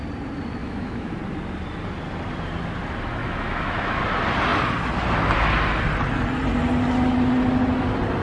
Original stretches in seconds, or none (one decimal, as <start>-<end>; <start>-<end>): 0.0-0.6; 1.2-3.2; 4.0-8.2